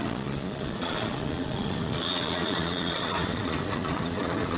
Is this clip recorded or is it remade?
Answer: remade